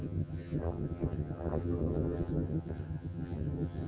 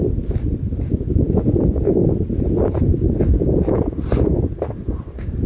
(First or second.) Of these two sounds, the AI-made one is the first